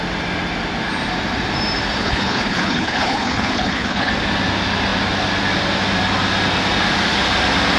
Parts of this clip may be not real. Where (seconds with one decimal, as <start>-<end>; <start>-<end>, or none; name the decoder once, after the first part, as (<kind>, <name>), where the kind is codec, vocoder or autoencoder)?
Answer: 2.0-4.1 (codec, HILCodec)